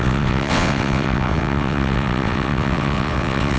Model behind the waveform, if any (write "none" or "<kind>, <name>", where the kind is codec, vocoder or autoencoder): vocoder, WaveNeXt